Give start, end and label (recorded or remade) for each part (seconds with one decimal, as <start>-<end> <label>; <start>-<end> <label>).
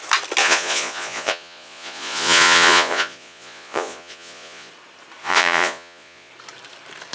0.0-0.4 recorded; 0.4-4.7 remade; 4.7-5.2 recorded; 5.2-6.3 remade; 6.3-7.1 recorded